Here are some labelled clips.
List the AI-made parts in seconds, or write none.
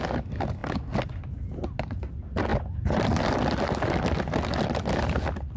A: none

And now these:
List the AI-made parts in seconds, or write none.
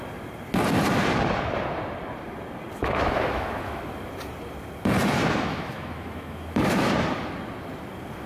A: 2.8-3.8 (autoencoder, DAC-VAE); 5.5-6.9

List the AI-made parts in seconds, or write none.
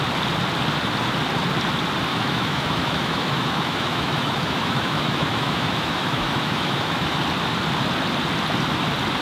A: 2.1-7.2 (autoencoder, DAC-VAE)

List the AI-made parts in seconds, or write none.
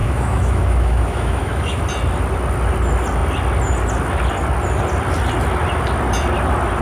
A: 0.0-1.8 (autoencoder, DAC-VAE)